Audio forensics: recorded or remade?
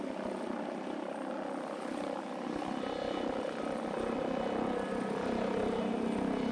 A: recorded